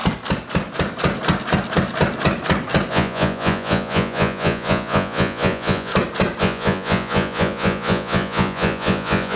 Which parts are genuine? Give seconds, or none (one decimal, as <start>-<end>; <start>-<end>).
0.0-2.9; 5.9-6.4